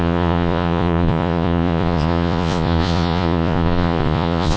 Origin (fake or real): fake